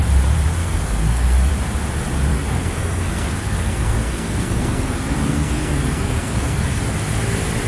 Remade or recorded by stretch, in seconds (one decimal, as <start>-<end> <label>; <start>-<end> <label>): 0.0-0.6 recorded; 0.6-1.5 remade; 1.5-2.3 recorded; 2.3-6.8 remade; 6.8-7.7 recorded